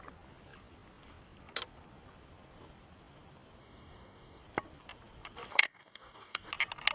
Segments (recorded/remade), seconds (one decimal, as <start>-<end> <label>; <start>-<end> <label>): 0.0-3.6 recorded; 3.6-4.4 remade; 4.4-5.5 recorded; 5.5-6.5 remade; 6.5-6.9 recorded